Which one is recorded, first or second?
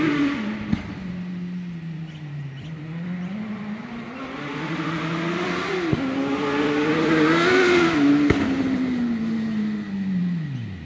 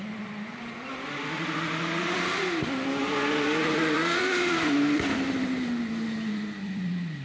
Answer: first